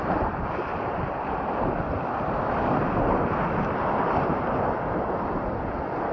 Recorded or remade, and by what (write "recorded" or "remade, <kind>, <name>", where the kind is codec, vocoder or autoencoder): recorded